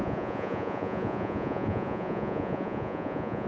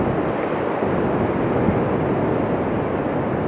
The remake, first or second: first